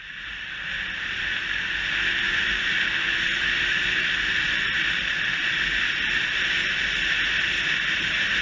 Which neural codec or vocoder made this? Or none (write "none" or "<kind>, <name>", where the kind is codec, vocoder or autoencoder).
none